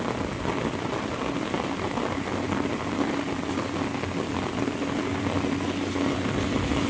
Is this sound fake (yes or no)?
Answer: no